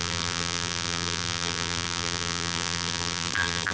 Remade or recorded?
remade